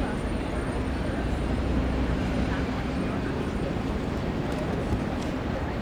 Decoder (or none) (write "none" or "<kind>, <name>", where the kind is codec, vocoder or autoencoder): vocoder, BigVGAN v2